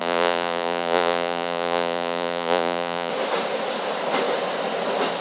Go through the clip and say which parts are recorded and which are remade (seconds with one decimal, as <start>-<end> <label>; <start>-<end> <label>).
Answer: 0.0-3.1 remade; 3.1-5.2 recorded